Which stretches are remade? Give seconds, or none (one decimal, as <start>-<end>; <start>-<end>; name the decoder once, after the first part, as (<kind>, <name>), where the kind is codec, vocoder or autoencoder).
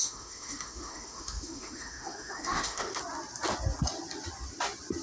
0.0-3.0 (autoencoder, DAC-VAE)